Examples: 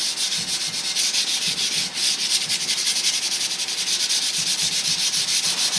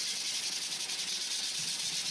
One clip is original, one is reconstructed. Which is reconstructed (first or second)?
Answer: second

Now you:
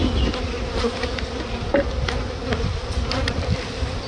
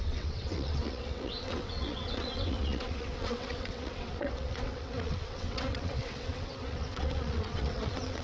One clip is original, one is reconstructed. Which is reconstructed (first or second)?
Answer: second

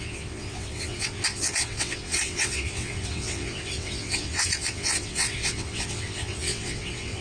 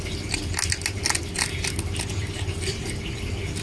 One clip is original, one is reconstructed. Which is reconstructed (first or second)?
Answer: first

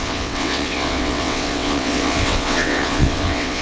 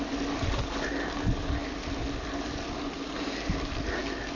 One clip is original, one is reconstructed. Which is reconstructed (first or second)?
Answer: first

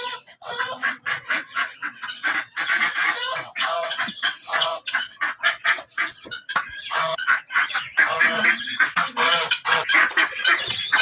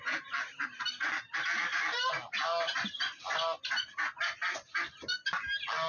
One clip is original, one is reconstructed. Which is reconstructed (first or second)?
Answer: first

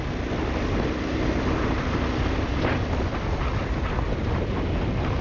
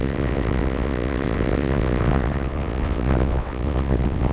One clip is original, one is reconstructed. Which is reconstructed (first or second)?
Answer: second